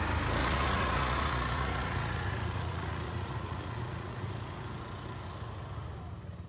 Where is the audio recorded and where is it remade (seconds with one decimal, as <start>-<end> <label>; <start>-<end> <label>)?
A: 0.0-0.4 recorded; 0.4-4.3 remade; 4.3-6.5 recorded